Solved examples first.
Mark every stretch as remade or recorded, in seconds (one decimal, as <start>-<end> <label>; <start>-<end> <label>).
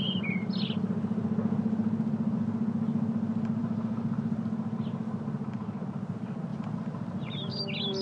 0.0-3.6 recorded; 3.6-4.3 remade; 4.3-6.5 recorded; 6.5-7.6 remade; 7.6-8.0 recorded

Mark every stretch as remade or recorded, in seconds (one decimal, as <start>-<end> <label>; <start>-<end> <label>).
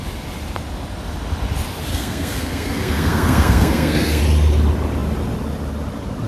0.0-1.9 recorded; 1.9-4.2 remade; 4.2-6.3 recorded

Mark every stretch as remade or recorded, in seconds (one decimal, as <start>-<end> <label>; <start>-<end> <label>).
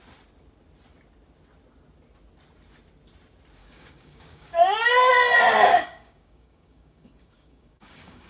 0.0-3.6 recorded; 3.6-5.1 remade; 5.1-5.7 recorded; 5.7-8.3 remade